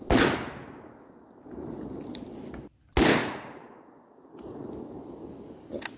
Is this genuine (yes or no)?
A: yes